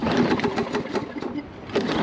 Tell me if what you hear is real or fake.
real